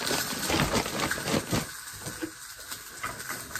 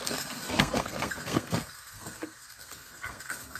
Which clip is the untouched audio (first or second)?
first